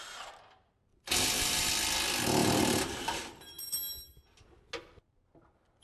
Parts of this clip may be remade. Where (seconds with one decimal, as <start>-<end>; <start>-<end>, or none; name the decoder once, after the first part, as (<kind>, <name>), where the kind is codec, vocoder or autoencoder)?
0.9-1.7 (vocoder, BigVGAN v2); 2.4-3.2